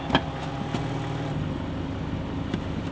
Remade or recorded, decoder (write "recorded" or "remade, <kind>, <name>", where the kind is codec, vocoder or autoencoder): recorded